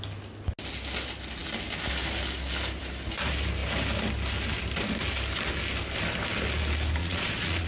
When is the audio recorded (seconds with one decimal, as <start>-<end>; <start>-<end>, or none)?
0.0-7.0